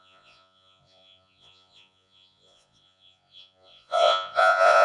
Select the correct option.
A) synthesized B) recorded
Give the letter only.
A